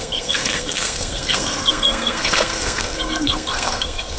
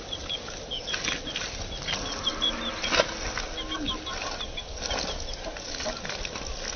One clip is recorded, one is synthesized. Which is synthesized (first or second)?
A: first